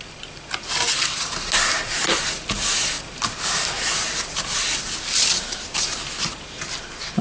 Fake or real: real